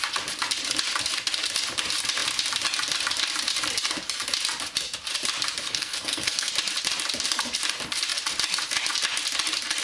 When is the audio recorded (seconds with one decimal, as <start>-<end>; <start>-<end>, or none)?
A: 0.0-5.6; 6.5-9.8